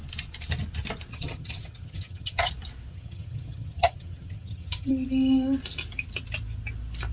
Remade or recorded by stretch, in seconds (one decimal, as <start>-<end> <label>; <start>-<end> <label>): 0.0-1.1 recorded; 1.1-2.5 remade; 2.5-2.9 recorded; 2.9-4.9 remade; 4.9-7.1 recorded